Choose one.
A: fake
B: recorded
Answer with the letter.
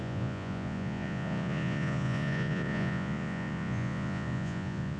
A